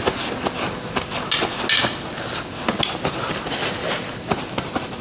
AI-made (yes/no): no